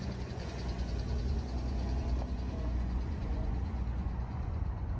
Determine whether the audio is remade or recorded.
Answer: remade